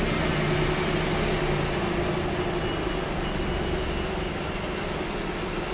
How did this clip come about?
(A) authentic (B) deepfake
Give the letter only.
A